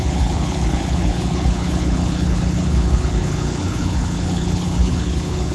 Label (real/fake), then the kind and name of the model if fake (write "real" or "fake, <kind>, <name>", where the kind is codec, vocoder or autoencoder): fake, codec, HILCodec